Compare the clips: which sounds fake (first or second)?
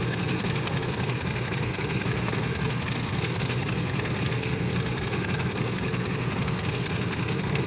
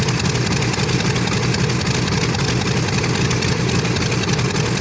first